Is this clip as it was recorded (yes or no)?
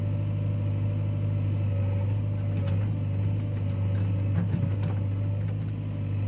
yes